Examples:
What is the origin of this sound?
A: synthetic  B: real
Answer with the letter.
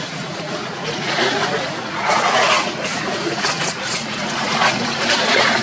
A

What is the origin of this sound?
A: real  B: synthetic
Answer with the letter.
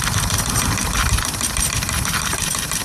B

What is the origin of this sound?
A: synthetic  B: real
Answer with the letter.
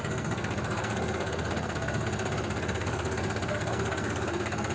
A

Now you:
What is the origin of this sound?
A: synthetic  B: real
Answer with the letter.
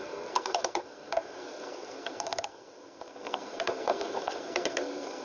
A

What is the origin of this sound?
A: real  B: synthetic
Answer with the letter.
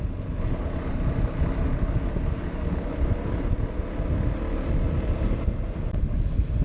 A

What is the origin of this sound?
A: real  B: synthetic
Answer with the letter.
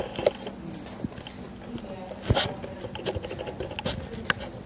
A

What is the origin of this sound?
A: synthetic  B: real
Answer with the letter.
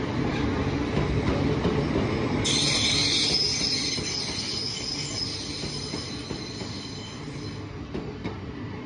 B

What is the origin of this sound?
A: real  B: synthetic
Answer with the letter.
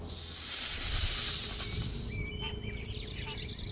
B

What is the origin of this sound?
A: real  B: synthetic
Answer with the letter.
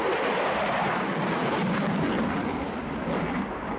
B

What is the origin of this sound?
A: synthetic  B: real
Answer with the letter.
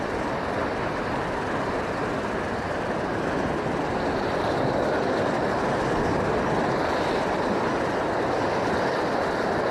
B